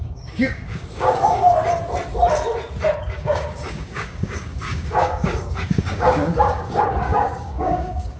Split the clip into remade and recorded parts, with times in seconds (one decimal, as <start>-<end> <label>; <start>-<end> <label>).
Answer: 0.0-1.5 remade; 1.5-3.0 recorded; 3.0-8.2 remade